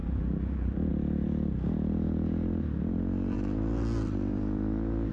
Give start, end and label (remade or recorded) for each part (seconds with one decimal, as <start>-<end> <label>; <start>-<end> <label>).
0.0-0.9 remade; 0.9-5.1 recorded